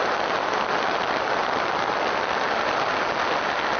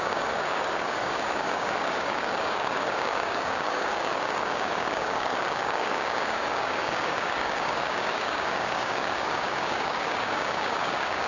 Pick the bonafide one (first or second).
first